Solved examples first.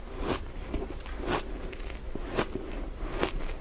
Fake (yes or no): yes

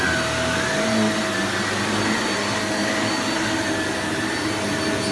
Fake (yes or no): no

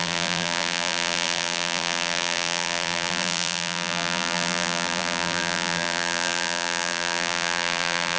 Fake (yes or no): yes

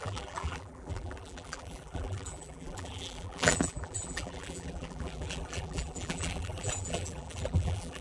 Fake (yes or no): yes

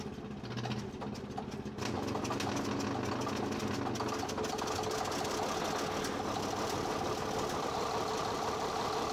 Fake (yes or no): no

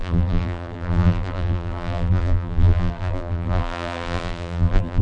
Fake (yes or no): yes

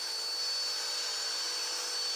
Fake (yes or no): no